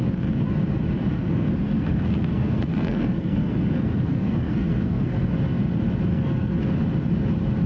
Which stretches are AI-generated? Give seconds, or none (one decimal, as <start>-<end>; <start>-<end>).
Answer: 1.1-5.3; 6.1-6.7